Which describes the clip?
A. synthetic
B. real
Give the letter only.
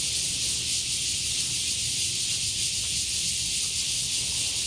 B